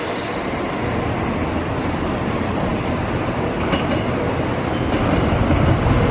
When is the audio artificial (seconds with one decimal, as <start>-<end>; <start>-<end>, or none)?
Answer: none